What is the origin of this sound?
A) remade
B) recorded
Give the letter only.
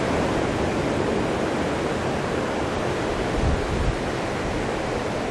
B